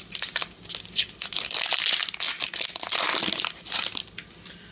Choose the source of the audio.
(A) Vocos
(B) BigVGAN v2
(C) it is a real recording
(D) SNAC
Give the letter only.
C